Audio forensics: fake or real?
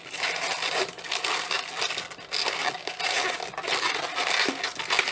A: real